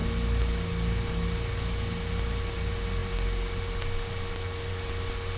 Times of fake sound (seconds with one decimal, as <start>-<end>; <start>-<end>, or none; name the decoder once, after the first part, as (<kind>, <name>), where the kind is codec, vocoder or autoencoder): none